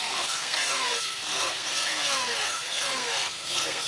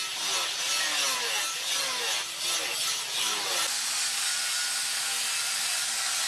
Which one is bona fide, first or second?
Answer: second